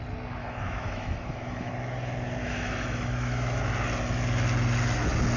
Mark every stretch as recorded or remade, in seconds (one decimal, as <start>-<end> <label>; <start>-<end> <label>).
0.0-0.4 recorded; 0.4-1.7 remade; 1.7-2.4 recorded; 2.4-3.6 remade; 3.6-5.4 recorded